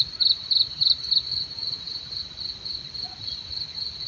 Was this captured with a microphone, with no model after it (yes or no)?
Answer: yes